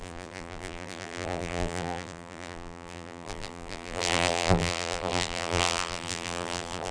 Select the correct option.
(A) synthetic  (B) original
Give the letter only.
A